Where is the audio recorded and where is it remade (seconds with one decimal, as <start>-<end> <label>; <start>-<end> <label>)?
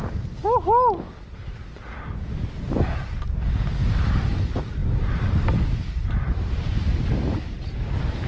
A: 0.0-4.8 recorded; 4.8-5.6 remade; 5.6-8.3 recorded